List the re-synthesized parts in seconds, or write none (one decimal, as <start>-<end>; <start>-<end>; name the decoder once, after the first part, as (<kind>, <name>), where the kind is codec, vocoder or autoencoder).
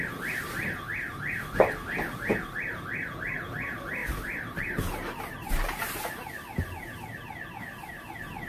4.0-6.3 (vocoder, BigVGAN v2)